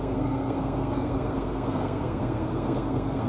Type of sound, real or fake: fake